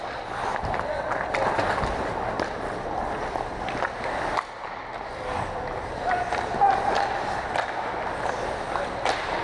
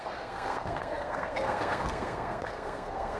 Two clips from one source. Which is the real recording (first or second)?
first